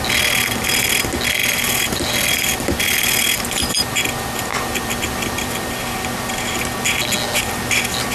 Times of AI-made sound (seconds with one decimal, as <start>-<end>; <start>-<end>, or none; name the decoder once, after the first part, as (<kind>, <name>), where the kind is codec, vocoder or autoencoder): 1.4-2.8 (vocoder, BigVGAN v2); 4.5-5.6